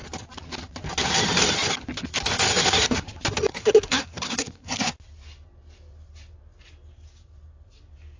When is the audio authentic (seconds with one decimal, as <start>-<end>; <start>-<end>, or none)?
0.0-3.5; 4.9-8.2